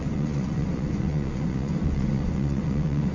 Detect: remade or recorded remade